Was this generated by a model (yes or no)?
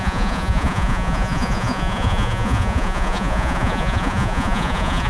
yes